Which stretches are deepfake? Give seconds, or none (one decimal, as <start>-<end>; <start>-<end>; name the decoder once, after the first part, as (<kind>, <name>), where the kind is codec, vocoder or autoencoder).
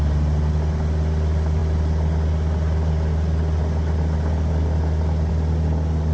none